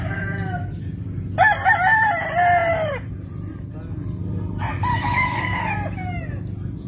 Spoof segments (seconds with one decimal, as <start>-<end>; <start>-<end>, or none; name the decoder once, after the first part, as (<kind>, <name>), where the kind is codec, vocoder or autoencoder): 4.9-5.6 (codec, DAC)